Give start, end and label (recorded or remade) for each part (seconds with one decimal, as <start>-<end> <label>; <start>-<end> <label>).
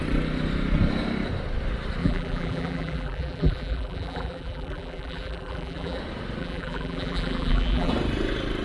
0.0-2.0 recorded; 2.0-6.0 remade; 6.0-6.4 recorded; 6.4-7.9 remade; 7.9-8.6 recorded